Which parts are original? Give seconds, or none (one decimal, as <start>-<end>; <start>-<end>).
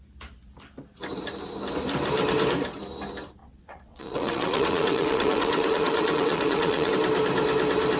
0.0-3.4; 6.9-8.0